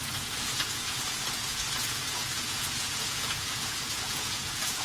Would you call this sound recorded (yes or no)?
no